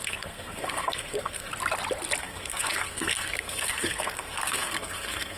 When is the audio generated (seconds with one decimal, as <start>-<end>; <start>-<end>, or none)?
0.0-1.5; 2.2-5.4